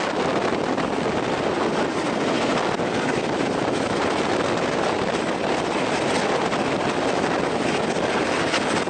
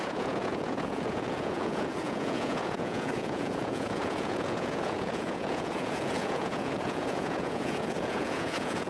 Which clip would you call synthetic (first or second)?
second